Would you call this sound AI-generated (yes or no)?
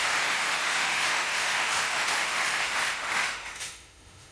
yes